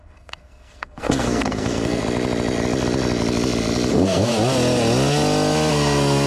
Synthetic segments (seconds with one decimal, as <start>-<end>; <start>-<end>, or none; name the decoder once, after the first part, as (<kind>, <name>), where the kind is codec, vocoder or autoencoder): 0.0-2.0 (codec, SNAC); 3.9-4.3; 5.7-6.3